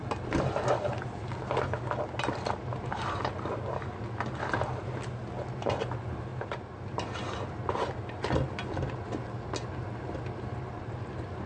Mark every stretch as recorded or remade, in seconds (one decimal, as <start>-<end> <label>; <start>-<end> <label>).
0.0-6.3 recorded; 6.3-8.1 remade; 8.1-11.5 recorded